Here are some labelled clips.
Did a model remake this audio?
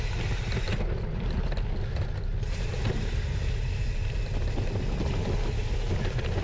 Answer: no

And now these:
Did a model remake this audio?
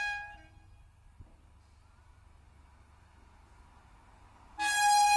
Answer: no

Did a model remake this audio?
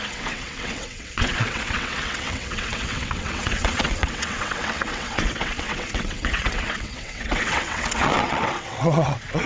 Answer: yes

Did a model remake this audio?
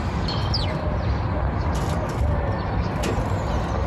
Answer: no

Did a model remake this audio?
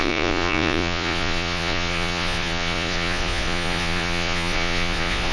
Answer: yes